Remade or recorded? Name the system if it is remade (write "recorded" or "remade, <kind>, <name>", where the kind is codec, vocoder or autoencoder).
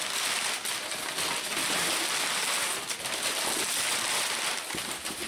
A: recorded